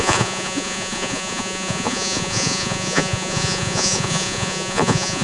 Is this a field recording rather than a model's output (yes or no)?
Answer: no